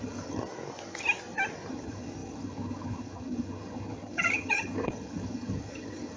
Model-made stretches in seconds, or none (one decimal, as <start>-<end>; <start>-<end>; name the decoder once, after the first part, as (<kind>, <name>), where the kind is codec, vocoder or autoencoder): 0.0-0.4 (vocoder, HiFi-GAN); 1.7-6.2